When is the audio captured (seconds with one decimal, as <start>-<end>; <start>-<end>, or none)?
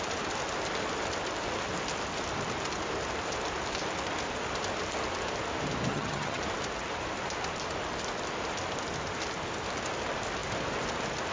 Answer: 0.0-5.9; 6.4-11.3